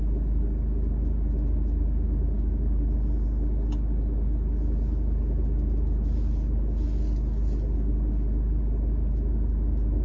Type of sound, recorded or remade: recorded